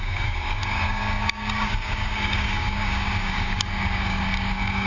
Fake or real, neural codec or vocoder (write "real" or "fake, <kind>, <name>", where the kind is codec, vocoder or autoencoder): fake, codec, DAC